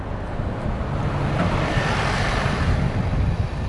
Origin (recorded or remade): recorded